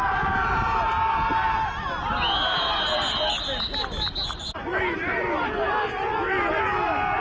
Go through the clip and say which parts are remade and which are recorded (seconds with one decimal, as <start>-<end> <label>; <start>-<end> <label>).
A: 0.0-4.7 recorded; 4.7-5.6 remade; 5.6-7.2 recorded